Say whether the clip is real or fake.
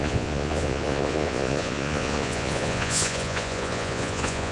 fake